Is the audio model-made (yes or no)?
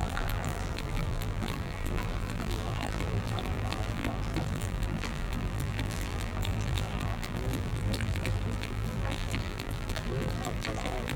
yes